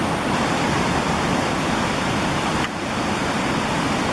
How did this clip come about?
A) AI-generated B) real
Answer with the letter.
B